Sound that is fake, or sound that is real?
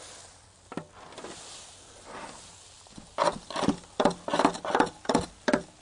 real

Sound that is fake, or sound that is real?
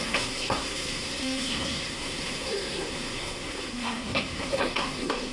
fake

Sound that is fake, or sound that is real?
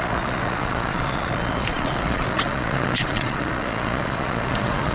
fake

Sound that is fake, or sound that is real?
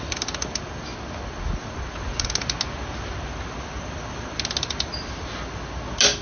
real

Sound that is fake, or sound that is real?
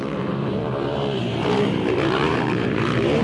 fake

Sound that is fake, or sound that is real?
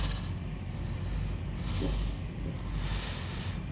real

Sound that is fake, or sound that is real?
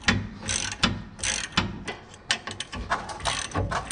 real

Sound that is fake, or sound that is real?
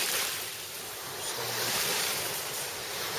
fake